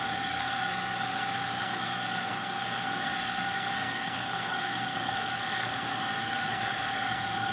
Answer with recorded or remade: remade